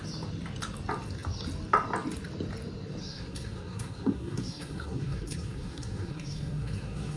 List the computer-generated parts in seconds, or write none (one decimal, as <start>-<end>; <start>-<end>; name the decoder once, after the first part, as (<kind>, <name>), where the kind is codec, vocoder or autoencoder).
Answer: 3.0-7.2 (codec, SNAC)